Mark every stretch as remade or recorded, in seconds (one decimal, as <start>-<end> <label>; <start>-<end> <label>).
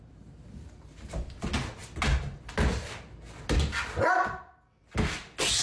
0.0-5.6 recorded